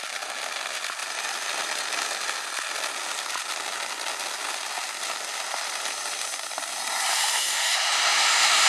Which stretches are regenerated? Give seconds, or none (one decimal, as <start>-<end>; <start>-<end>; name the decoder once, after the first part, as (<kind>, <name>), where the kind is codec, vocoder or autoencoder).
7.1-8.7 (autoencoder, DAC-VAE)